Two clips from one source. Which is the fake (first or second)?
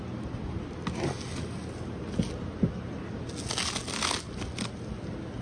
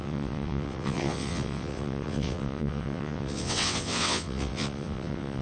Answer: second